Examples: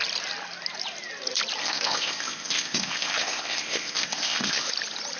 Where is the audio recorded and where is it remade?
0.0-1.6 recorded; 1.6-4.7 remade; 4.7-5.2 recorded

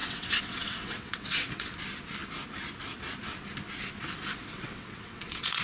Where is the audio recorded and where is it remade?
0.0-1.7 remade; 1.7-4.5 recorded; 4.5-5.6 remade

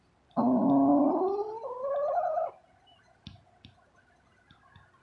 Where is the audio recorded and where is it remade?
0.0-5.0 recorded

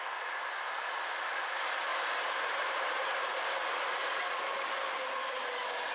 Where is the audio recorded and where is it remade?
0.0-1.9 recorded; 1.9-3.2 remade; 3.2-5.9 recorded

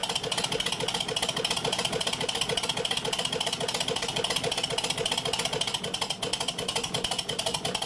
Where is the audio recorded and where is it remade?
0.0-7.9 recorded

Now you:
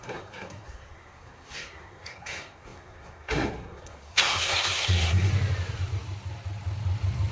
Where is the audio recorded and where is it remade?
0.0-5.3 remade; 5.3-7.3 recorded